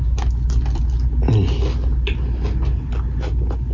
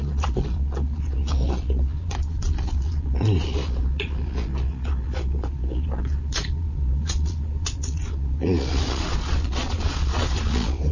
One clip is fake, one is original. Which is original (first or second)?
first